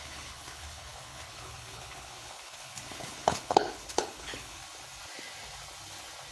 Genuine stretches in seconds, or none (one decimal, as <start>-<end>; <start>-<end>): 4.6-6.3